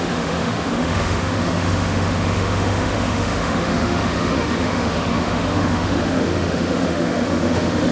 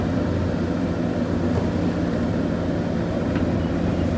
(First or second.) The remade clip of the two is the first